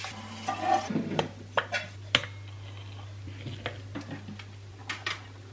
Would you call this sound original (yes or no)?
yes